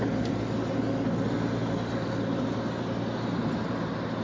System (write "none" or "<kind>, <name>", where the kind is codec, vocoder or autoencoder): none